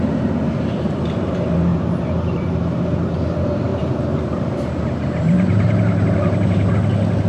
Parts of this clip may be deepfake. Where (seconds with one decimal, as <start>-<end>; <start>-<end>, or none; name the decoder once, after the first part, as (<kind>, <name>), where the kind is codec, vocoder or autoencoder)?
1.7-3.1 (vocoder, BigVGAN v2); 3.7-6.7